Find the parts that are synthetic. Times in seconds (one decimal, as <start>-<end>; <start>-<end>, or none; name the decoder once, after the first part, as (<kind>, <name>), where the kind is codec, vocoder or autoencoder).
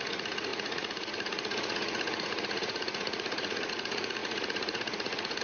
0.0-5.4 (vocoder, Vocos)